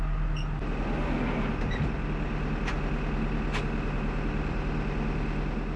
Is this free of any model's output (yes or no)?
yes